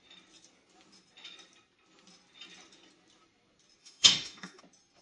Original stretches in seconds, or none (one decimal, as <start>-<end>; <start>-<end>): 0.0-3.8; 4.6-5.0